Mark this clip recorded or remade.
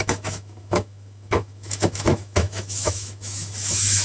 remade